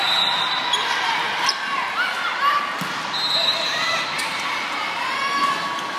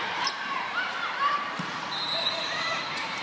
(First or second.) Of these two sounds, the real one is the first